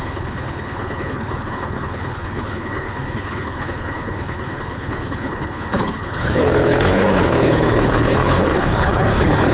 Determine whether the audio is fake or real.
fake